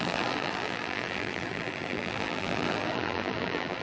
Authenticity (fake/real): fake